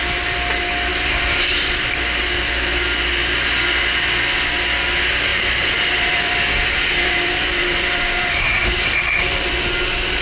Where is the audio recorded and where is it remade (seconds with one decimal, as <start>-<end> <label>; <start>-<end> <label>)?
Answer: 0.0-0.9 recorded; 0.9-1.9 remade; 1.9-5.3 recorded; 5.3-8.6 remade; 8.6-10.2 recorded